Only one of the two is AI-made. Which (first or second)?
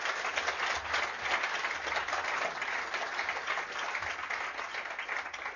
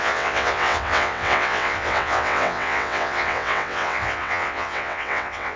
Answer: second